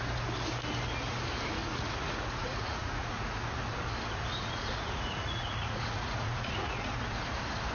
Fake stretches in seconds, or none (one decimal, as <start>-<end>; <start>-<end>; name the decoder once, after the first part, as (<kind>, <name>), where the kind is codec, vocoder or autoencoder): 1.6-3.4 (vocoder, Vocos); 4.4-6.9